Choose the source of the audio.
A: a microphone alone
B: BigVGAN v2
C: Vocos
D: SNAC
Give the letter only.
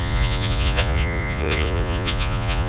C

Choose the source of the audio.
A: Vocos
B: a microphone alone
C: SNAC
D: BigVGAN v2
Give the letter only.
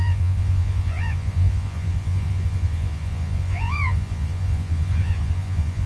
A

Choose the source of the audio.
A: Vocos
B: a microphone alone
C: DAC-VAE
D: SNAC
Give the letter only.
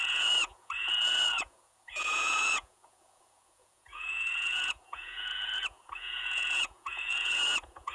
A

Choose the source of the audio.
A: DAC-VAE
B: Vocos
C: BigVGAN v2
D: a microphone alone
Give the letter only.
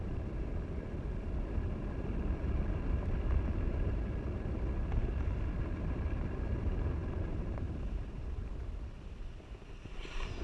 D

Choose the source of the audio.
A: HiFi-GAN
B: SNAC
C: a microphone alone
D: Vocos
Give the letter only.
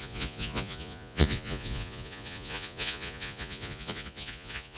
D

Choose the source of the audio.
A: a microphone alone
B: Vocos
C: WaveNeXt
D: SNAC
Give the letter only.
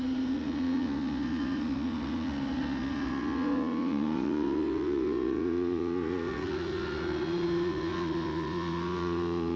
B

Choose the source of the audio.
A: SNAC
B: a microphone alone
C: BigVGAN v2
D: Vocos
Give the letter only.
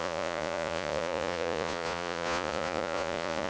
D